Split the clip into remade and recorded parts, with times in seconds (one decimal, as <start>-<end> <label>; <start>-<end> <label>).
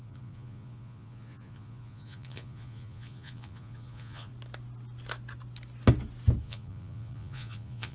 0.0-4.3 remade; 4.3-6.4 recorded; 6.4-7.9 remade